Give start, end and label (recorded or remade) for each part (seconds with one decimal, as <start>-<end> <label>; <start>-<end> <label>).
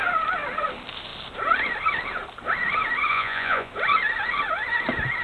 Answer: 0.0-3.1 recorded; 3.1-3.7 remade; 3.7-5.2 recorded